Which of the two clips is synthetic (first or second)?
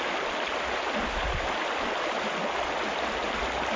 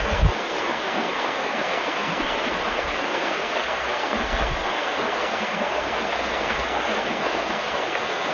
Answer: second